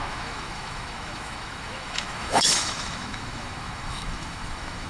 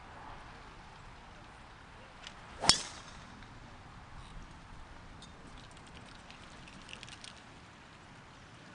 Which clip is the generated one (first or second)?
first